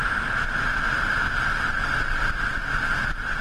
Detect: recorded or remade recorded